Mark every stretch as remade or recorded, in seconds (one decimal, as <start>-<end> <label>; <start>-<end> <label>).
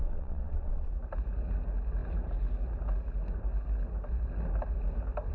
0.0-0.9 remade; 0.9-5.3 recorded